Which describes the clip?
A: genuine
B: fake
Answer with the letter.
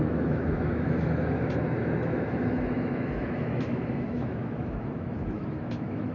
B